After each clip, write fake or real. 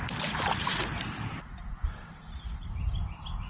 real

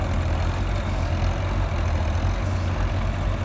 real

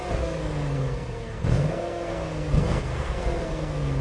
fake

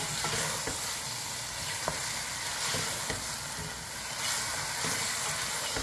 real